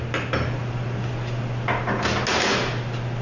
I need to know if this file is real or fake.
real